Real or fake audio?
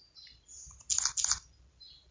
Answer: real